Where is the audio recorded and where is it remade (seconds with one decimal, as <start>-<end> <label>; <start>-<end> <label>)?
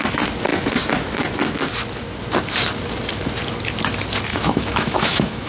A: 0.0-4.3 recorded; 4.3-5.5 remade